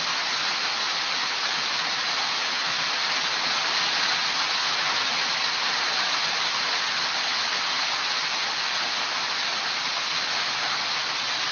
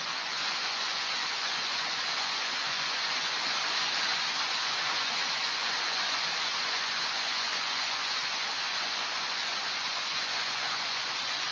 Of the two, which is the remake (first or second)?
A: second